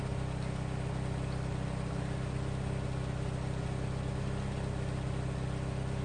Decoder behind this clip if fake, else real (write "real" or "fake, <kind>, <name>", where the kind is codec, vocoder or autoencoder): real